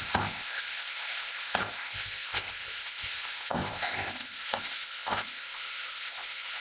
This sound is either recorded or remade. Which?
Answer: remade